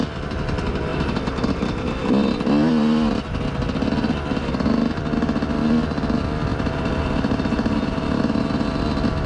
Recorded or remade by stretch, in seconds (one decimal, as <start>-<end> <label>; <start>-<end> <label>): 0.0-0.9 recorded; 0.9-1.5 remade; 1.5-6.5 recorded; 6.5-8.7 remade; 8.7-9.3 recorded